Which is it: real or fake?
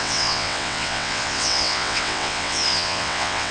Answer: fake